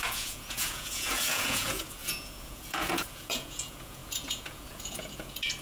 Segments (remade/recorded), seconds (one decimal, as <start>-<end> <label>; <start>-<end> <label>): 0.0-5.6 remade

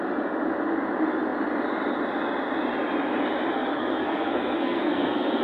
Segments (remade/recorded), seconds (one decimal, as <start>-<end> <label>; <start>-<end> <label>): 0.0-3.7 recorded; 3.7-5.4 remade

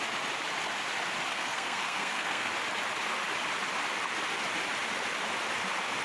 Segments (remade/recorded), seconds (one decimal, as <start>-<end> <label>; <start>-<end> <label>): 0.0-1.3 recorded; 1.3-2.5 remade; 2.5-6.0 recorded

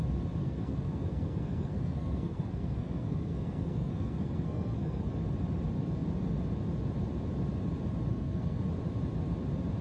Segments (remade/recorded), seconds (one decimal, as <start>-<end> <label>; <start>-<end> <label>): 0.0-0.4 recorded; 0.4-5.1 remade; 5.1-8.1 recorded; 8.1-8.6 remade; 8.6-9.8 recorded